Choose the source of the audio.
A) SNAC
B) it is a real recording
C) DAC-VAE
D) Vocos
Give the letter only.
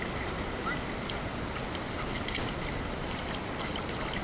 B